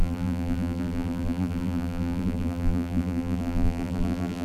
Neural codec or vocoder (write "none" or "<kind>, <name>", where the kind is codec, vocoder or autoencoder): vocoder, BigVGAN v2